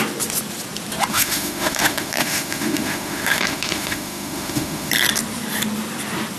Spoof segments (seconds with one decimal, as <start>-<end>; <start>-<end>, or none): 1.1-4.9